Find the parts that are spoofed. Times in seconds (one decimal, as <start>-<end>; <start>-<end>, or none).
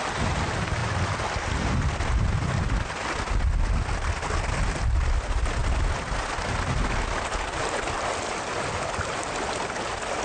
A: none